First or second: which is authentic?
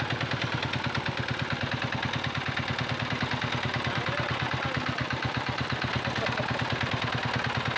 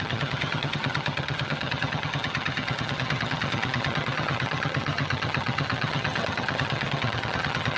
first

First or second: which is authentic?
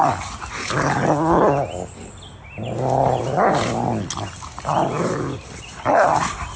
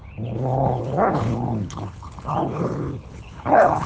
first